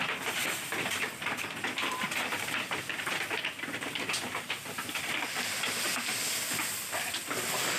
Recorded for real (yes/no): yes